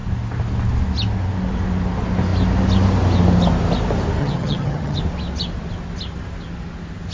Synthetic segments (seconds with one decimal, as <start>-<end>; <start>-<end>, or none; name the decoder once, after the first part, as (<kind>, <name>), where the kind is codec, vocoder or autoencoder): 4.2-5.0 (vocoder, HiFi-GAN)